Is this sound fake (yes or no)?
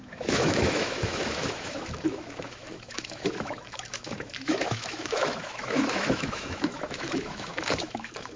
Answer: yes